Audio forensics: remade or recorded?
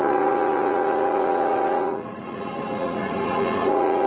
remade